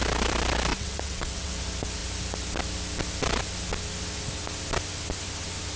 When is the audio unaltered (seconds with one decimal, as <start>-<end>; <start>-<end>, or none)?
0.0-0.7; 1.5-5.8